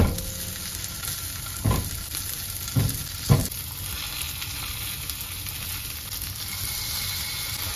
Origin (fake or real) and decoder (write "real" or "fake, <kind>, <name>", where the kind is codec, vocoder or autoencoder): real